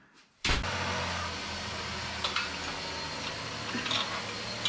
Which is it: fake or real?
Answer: real